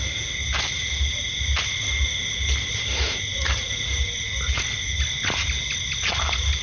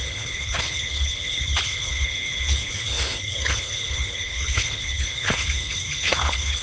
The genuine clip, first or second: first